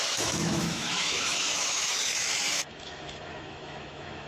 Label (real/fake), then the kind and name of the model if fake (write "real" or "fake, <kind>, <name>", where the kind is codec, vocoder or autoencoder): fake, autoencoder, DAC-VAE